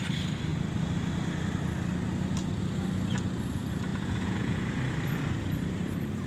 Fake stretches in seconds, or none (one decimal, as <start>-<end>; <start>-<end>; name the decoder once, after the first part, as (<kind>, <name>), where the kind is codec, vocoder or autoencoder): 3.9-4.8 (vocoder, Vocos)